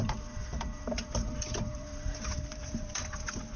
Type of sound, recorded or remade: remade